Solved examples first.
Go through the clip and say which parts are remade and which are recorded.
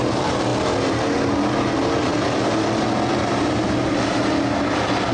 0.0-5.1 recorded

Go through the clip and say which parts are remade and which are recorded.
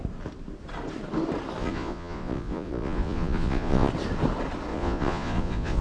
0.0-1.6 recorded; 1.6-3.9 remade; 3.9-4.7 recorded; 4.7-5.8 remade